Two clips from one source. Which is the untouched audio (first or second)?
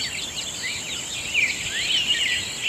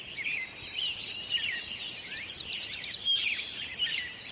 first